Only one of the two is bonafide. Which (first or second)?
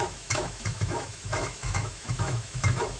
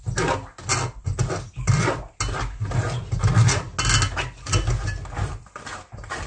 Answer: second